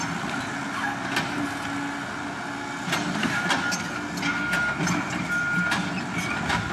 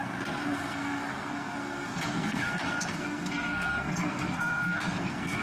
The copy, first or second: second